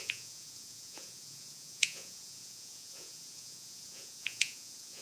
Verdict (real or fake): fake